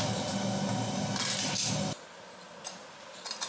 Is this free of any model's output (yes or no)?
yes